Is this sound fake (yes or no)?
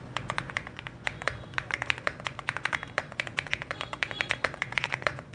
yes